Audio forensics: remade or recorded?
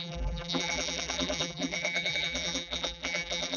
remade